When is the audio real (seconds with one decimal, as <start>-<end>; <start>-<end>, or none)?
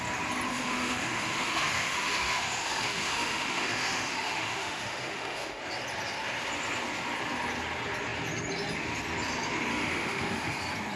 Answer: 0.0-0.5; 5.6-9.7; 10.6-11.0